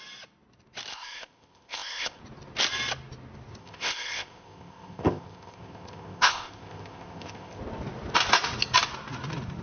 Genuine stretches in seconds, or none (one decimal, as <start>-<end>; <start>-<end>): 0.0-0.9; 2.2-3.6; 7.6-9.6